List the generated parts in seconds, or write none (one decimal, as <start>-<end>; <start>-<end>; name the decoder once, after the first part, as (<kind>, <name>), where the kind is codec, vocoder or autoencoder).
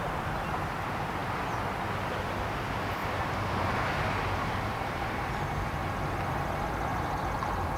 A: 3.0-5.1 (vocoder, BigVGAN v2); 6.9-7.8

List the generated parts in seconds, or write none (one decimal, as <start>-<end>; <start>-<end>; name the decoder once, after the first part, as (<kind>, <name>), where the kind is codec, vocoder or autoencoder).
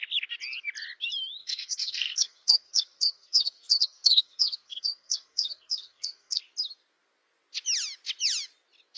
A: 1.4-6.4 (codec, SNAC)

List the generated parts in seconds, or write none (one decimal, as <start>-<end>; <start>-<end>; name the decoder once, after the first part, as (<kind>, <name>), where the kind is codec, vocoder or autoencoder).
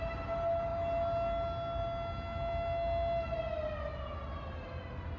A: none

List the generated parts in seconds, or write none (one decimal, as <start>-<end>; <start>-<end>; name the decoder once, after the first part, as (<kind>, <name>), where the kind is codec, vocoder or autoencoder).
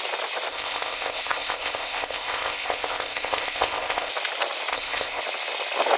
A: 0.5-4.1 (codec, ZipCodec); 4.7-5.2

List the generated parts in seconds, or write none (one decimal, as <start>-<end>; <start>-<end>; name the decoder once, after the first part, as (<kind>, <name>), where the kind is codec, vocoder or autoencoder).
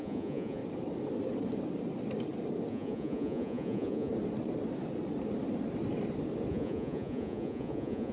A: 0.0-0.6 (vocoder, Vocos); 2.7-4.1; 6.5-8.1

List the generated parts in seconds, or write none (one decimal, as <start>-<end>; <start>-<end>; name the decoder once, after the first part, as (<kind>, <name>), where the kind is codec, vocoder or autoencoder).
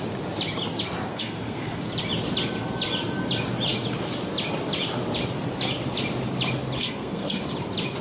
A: 1.1-1.8 (codec, SNAC); 6.8-7.4